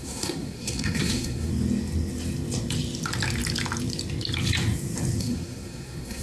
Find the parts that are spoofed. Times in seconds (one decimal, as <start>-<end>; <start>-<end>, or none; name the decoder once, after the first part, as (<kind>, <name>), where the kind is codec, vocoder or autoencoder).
0.0-1.5 (codec, SNAC); 5.2-6.2